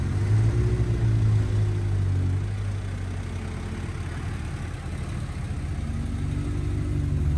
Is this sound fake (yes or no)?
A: no